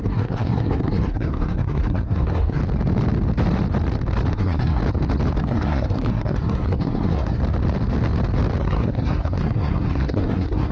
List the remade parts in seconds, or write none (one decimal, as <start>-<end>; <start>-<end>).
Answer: 0.0-2.6; 4.3-4.8; 5.4-7.4; 8.6-10.7

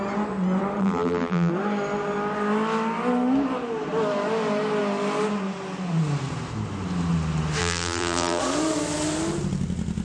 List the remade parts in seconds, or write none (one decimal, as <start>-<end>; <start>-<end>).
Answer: 0.8-1.5; 7.6-8.4

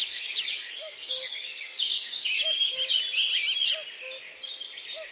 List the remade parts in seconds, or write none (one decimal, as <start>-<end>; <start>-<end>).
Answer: 0.0-2.8

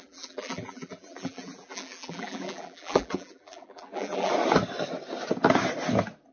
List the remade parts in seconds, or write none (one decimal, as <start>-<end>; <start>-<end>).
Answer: 0.0-4.3

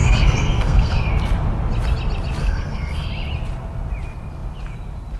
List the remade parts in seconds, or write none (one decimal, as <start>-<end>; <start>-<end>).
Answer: 0.0-1.1; 2.4-3.1

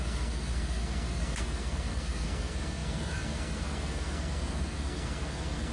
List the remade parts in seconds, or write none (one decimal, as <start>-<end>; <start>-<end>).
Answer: 0.0-5.7

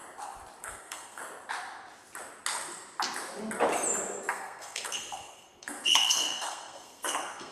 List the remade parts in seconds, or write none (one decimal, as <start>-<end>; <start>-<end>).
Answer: 0.6-1.2; 4.3-7.5